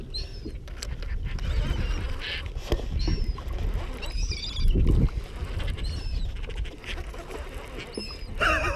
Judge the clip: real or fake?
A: real